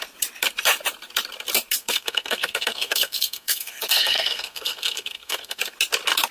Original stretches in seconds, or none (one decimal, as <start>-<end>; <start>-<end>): 0.0-1.8; 5.6-6.3